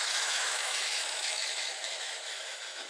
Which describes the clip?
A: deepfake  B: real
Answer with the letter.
A